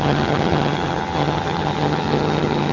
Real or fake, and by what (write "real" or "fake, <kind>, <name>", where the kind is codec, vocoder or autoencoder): fake, vocoder, HiFi-GAN